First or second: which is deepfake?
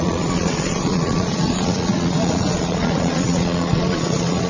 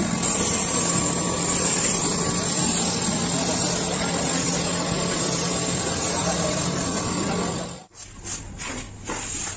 first